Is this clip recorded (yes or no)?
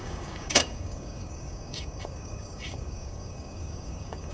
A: no